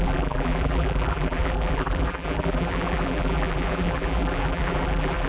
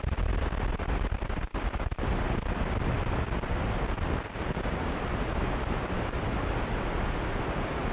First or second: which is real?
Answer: second